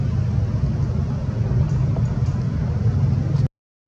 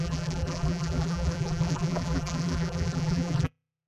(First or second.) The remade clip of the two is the second